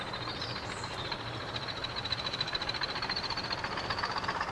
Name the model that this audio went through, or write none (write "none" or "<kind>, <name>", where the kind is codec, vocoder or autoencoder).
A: vocoder, BigVGAN v2